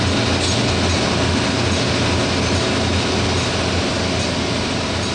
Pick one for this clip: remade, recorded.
recorded